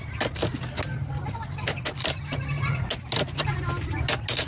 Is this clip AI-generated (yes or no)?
no